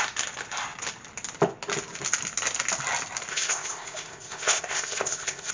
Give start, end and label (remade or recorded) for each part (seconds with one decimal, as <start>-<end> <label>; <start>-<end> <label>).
0.0-3.3 recorded; 3.3-5.5 remade